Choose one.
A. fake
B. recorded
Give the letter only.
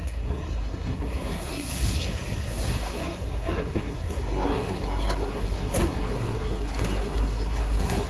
A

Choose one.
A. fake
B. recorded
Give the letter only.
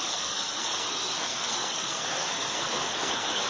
A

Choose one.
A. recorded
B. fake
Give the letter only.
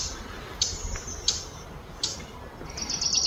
A